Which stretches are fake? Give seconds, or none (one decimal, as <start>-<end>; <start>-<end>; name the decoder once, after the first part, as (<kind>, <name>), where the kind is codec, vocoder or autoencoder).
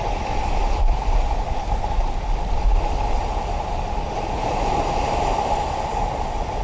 none